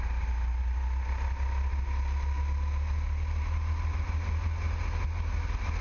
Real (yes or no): yes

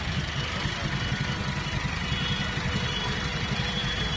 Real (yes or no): yes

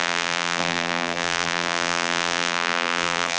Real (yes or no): no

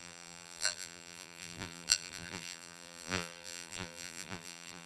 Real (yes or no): no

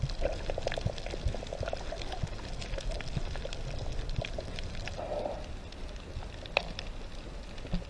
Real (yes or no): no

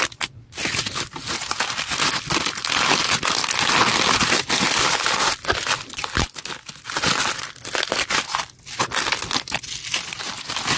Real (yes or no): yes